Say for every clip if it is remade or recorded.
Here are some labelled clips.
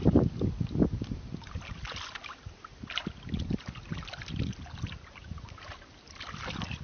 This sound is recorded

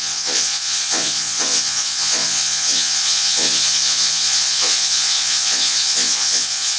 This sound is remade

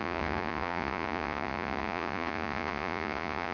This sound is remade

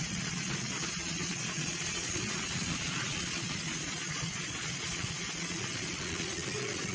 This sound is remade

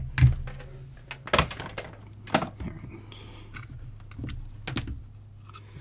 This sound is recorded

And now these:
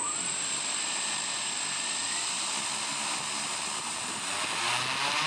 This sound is recorded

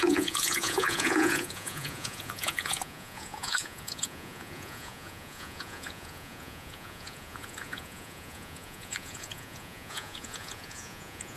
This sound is remade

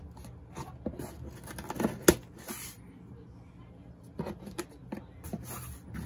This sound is recorded